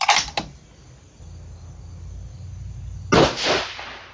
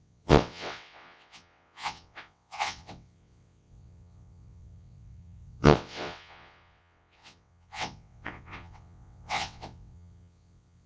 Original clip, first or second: first